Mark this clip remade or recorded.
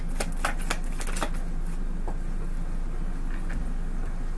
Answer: recorded